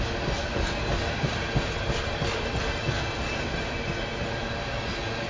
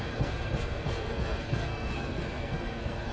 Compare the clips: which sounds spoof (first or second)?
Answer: second